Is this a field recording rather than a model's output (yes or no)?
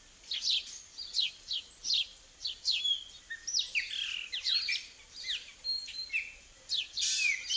no